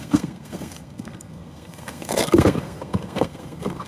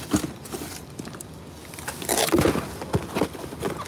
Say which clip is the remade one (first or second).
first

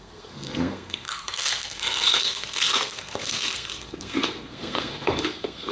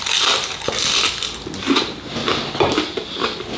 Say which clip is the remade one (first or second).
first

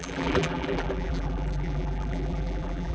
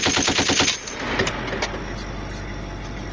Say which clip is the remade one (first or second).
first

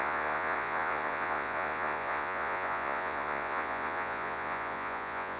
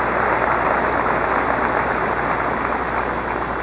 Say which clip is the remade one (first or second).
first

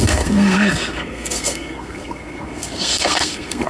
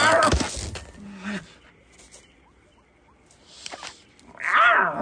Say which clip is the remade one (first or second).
first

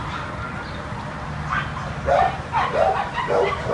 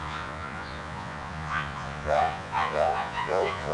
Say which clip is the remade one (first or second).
second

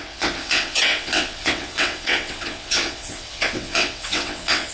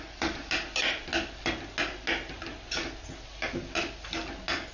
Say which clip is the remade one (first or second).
first